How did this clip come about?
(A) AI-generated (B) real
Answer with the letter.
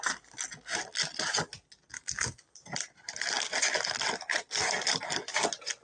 B